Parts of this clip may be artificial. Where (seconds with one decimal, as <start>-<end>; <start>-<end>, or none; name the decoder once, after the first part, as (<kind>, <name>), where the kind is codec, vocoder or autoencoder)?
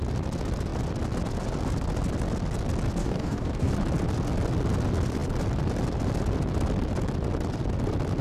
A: 3.0-3.7 (codec, DAC)